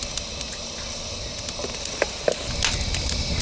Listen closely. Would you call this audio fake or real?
real